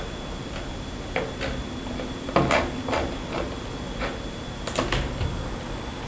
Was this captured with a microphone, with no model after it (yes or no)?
yes